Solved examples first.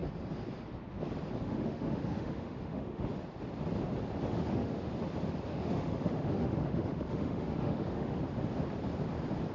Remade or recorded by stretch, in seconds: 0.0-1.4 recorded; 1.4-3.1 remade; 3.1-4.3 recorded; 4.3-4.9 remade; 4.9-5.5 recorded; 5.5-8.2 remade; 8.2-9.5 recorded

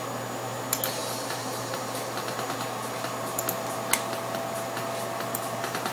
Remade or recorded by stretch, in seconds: 0.0-5.9 recorded